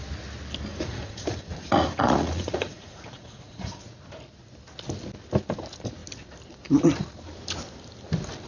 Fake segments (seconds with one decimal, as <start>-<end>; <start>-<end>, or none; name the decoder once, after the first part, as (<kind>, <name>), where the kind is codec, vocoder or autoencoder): 0.7-3.8 (vocoder, Vocos)